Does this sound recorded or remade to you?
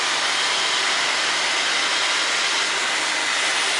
recorded